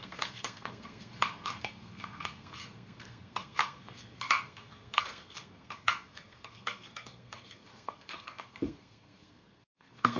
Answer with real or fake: fake